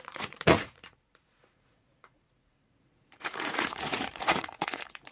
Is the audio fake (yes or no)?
yes